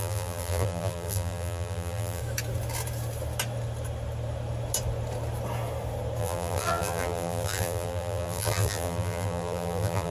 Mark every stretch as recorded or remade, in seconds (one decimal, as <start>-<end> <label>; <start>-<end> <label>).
0.0-2.2 remade; 2.2-6.2 recorded; 6.2-10.1 remade